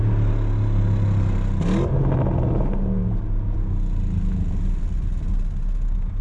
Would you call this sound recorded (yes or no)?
yes